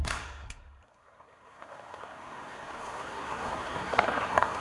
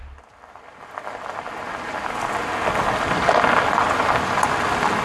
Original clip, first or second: second